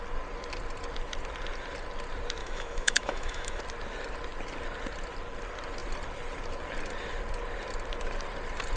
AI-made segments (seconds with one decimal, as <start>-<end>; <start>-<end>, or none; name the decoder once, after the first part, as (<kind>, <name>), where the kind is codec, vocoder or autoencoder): 2.4-3.6 (autoencoder, DAC-VAE)